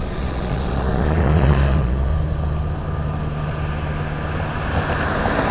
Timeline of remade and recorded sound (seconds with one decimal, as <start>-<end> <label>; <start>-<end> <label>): 0.0-2.1 remade; 2.1-5.5 recorded